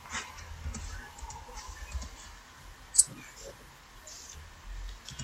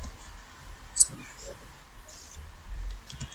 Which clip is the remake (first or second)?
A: second